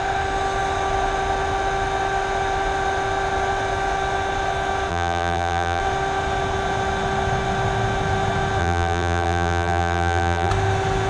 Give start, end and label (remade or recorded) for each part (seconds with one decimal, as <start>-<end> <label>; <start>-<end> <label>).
0.0-4.9 recorded; 4.9-5.8 remade; 5.8-8.6 recorded; 8.6-10.5 remade; 10.5-11.1 recorded